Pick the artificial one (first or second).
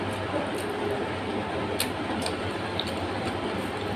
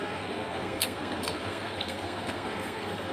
second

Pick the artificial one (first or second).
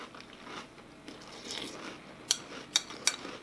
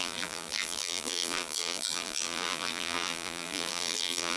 second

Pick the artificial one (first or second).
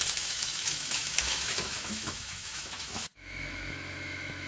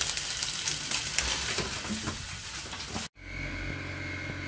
first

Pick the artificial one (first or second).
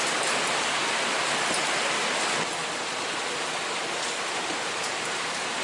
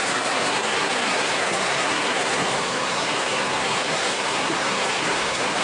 second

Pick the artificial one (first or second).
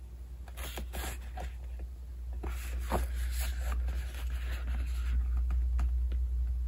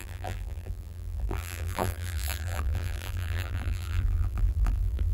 second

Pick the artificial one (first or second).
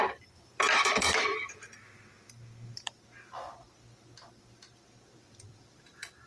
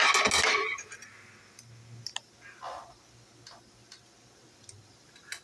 first